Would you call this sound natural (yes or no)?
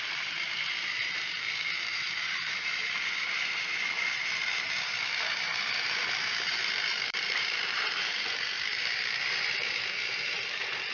no